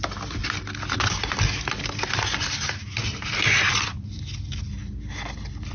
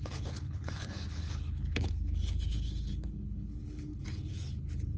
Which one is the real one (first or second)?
first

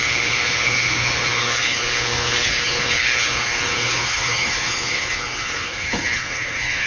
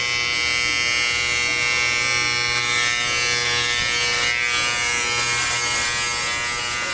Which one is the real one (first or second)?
second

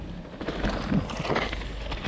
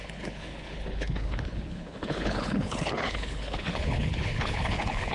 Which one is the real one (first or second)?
first